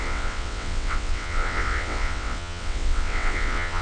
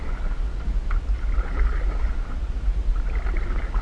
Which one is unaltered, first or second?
second